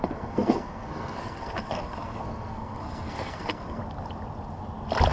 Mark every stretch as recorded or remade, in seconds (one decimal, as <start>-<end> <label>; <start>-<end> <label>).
0.0-3.8 remade; 3.8-5.1 recorded